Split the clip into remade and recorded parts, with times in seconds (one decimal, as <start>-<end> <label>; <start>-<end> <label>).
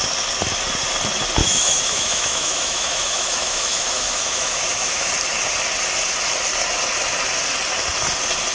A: 0.0-1.4 recorded; 1.4-5.1 remade; 5.1-8.5 recorded